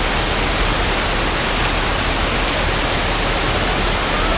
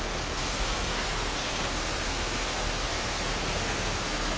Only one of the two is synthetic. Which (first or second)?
second